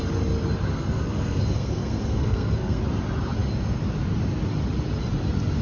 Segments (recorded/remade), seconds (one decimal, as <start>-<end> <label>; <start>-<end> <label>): 0.0-0.7 recorded; 0.7-2.8 remade; 2.8-5.6 recorded